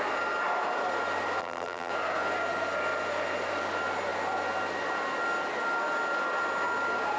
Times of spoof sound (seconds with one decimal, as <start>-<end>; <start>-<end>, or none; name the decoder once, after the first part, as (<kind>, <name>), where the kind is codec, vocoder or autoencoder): 1.4-1.9 (vocoder, BigVGAN v2)